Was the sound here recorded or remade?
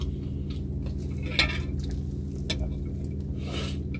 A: recorded